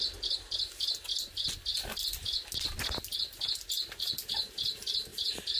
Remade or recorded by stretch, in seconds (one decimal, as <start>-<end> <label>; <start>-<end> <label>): 0.0-5.1 recorded; 5.1-5.6 remade